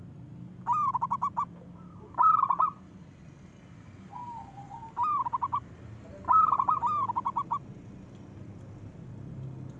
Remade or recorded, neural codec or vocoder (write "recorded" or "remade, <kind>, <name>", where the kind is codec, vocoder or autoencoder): recorded